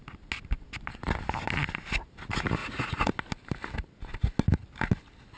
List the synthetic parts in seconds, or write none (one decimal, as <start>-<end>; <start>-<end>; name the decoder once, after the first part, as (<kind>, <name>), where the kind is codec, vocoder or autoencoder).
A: 2.6-3.1 (vocoder, Vocos)